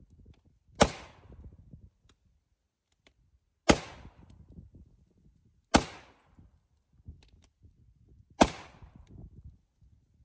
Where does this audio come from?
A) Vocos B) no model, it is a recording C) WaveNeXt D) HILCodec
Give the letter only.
B